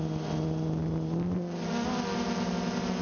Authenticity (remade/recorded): recorded